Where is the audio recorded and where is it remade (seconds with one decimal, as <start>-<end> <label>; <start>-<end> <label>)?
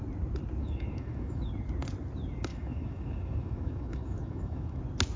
0.0-0.6 recorded; 0.6-1.5 remade; 1.5-2.5 recorded; 2.5-4.8 remade; 4.8-5.2 recorded